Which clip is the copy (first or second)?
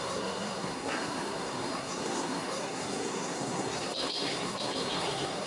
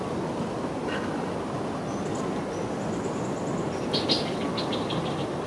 first